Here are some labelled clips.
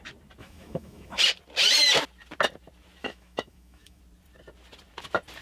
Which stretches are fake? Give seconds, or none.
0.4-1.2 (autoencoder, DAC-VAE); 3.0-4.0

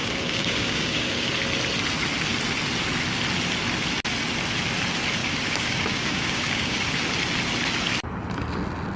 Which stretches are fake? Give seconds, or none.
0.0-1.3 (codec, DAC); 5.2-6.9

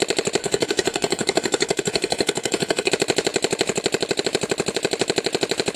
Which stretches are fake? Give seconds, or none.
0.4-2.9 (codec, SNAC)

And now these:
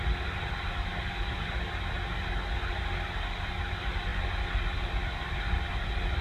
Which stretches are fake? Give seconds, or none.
none

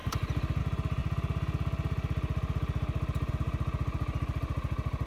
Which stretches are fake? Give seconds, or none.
0.0-0.6 (vocoder, BigVGAN v2)

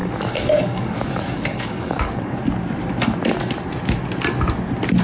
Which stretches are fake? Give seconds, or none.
0.0-2.4 (codec, DAC)

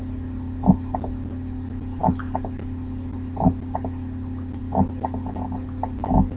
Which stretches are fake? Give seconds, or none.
none

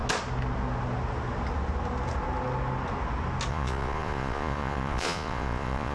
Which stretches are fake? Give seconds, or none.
3.5-5.9 (vocoder, Vocos)